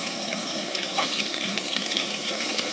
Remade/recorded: remade